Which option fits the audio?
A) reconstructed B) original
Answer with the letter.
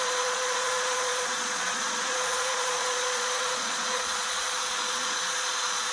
A